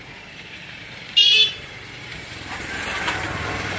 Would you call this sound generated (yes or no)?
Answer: yes